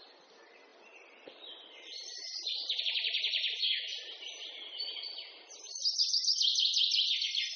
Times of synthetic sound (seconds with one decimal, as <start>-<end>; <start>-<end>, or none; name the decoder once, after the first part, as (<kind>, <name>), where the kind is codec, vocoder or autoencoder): 0.0-3.9 (vocoder, BigVGAN v2); 4.7-6.1; 6.9-7.6